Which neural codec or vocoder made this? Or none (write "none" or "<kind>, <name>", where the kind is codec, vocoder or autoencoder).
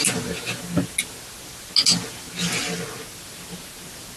none